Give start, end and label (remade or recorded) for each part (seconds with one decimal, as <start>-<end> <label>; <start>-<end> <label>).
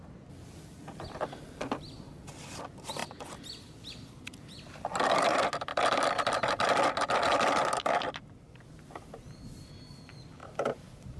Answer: 0.0-10.4 recorded; 10.4-11.2 remade